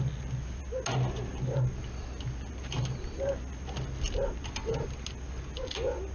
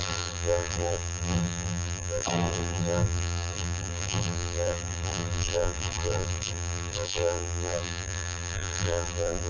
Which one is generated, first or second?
second